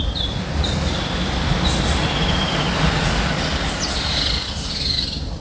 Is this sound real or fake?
real